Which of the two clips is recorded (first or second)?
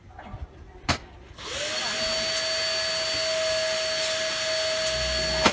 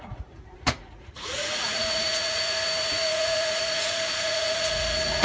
first